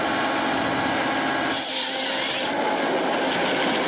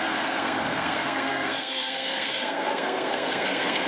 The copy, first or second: second